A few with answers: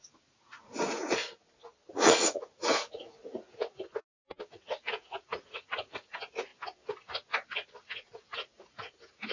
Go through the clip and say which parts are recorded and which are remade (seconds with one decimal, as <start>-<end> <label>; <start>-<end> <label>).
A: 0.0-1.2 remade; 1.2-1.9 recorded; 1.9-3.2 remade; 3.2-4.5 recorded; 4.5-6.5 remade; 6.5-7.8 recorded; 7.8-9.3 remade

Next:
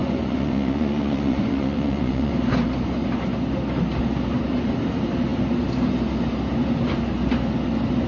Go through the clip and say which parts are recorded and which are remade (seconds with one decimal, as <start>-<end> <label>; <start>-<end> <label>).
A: 0.0-2.3 remade; 2.3-8.1 recorded

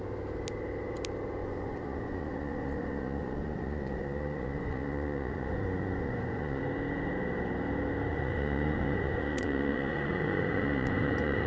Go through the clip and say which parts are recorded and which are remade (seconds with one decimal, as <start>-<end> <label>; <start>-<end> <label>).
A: 0.0-1.4 recorded; 1.4-6.6 remade; 6.6-8.1 recorded; 8.1-11.5 remade

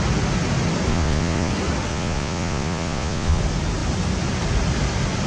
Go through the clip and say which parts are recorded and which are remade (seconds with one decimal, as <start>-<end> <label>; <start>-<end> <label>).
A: 0.0-0.9 recorded; 0.9-1.5 remade; 1.5-1.9 recorded; 1.9-3.4 remade; 3.4-5.3 recorded

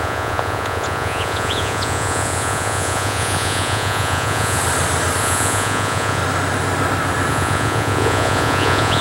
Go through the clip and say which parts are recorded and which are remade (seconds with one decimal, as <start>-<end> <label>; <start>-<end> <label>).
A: 0.0-4.6 remade; 4.6-5.2 recorded; 5.2-6.2 remade; 6.2-7.3 recorded; 7.3-9.0 remade